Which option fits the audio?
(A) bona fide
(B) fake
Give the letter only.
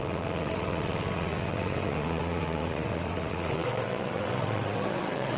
B